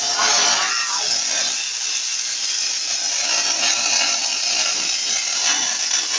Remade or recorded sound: recorded